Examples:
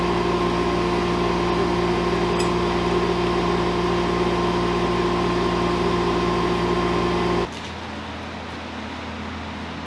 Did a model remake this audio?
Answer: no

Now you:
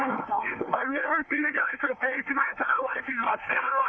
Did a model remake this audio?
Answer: yes